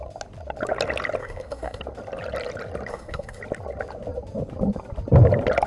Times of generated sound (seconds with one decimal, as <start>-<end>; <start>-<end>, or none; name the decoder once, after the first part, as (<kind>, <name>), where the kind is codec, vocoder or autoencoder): 1.2-1.8 (codec, SNAC); 2.9-3.4